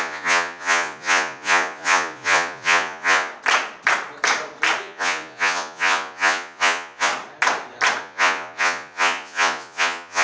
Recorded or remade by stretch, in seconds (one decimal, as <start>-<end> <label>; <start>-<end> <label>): 0.0-3.3 remade; 3.3-4.8 recorded; 4.8-7.1 remade; 7.1-8.0 recorded; 8.0-10.2 remade